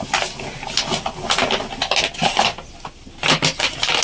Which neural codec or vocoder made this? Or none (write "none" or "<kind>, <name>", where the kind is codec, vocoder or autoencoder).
none